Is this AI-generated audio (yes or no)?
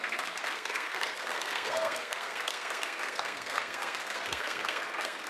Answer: yes